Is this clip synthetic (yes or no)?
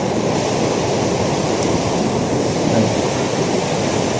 no